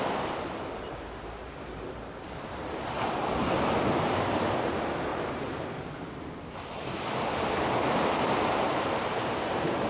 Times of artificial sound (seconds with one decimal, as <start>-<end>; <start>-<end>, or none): 1.4-2.2; 5.1-9.1